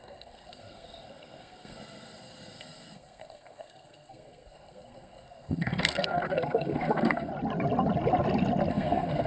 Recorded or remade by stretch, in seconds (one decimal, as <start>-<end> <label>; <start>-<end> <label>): 0.0-7.3 remade; 7.3-8.7 recorded; 8.7-9.3 remade